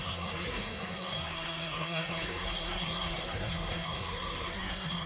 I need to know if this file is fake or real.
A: fake